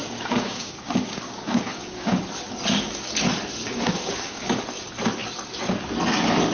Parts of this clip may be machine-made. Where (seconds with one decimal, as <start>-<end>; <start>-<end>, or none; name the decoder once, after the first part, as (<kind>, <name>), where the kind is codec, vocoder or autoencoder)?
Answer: 0.0-2.2 (codec, DAC); 3.6-4.6